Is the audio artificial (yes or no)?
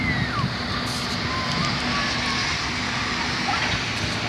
no